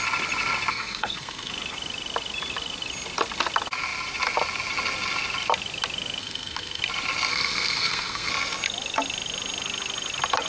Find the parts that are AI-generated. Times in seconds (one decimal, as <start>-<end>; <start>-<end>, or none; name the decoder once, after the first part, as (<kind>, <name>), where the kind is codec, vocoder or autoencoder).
0.7-1.5 (codec, SNAC); 6.2-6.8; 7.3-8.3